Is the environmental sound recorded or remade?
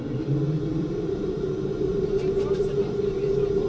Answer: recorded